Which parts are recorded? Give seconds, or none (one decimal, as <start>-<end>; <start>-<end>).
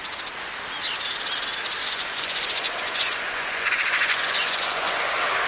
0.0-1.8; 5.1-5.5